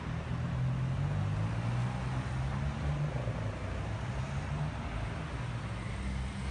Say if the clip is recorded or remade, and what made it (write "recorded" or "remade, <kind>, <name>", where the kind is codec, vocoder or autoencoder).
recorded